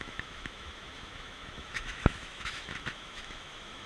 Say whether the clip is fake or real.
fake